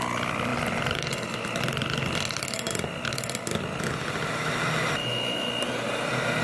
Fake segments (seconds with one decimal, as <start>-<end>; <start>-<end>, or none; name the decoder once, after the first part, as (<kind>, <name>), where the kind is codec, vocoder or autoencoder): 5.0-5.5 (autoencoder, DAC-VAE)